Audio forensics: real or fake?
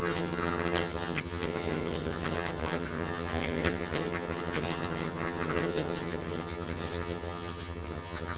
fake